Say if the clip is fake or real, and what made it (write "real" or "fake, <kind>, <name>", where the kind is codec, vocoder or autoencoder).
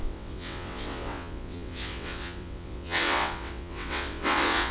fake, vocoder, WaveNeXt